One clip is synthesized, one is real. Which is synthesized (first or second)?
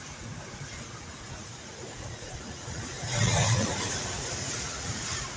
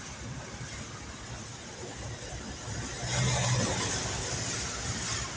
first